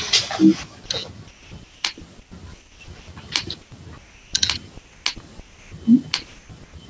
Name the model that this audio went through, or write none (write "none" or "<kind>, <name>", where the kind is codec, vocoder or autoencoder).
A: none